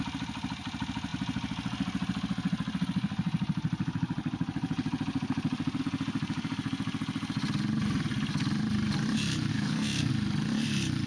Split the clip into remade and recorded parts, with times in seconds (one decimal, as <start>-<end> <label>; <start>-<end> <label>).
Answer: 0.0-9.5 recorded; 9.5-10.1 remade; 10.1-11.1 recorded

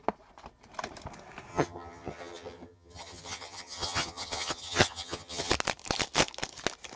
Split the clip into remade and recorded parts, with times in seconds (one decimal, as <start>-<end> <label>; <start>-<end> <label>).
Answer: 0.0-1.5 recorded; 1.5-5.5 remade; 5.5-7.0 recorded